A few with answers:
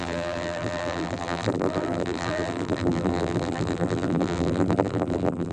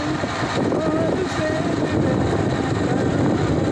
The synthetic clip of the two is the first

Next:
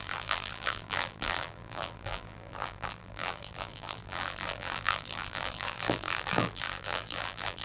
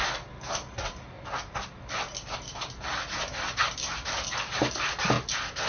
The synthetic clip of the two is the first